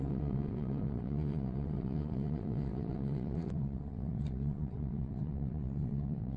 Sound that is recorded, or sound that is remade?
remade